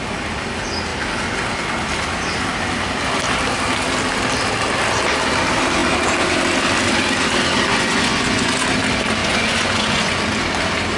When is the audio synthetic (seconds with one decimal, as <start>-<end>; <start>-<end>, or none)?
7.7-8.5; 9.2-10.2